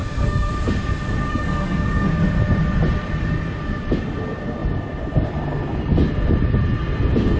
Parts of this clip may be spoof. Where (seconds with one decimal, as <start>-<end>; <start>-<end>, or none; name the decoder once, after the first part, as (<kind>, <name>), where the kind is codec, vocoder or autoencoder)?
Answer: 0.0-0.5 (codec, SNAC); 1.3-2.1